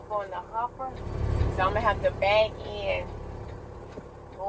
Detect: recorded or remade recorded